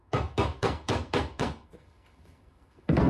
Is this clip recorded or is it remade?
remade